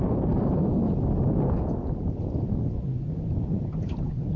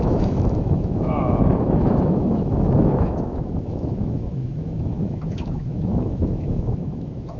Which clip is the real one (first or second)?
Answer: first